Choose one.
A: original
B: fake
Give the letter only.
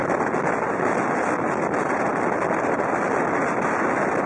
A